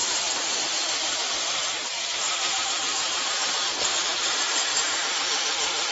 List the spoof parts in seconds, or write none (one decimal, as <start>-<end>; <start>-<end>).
0.0-3.5